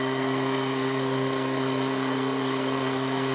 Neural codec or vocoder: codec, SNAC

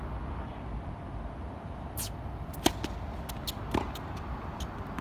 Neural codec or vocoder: none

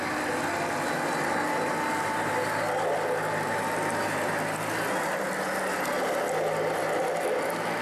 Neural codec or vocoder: none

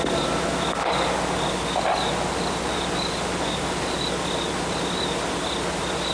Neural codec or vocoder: none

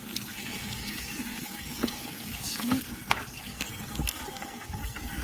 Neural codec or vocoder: codec, SNAC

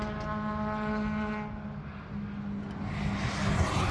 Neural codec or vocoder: none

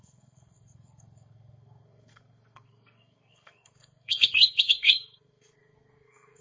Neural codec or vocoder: codec, SNAC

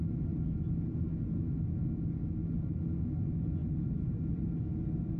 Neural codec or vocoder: none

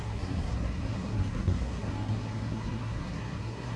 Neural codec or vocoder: codec, SNAC